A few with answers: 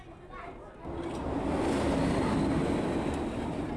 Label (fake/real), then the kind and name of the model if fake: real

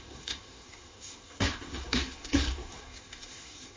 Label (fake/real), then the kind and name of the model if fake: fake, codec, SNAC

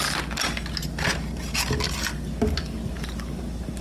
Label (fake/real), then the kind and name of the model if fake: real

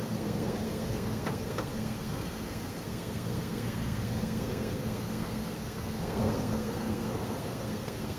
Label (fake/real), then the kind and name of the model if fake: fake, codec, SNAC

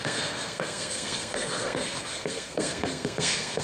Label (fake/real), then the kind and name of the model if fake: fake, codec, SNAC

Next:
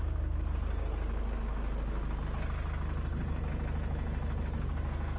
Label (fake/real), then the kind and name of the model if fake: real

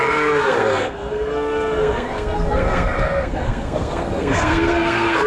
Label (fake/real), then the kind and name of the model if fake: fake, codec, SNAC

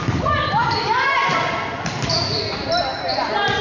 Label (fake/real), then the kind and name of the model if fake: real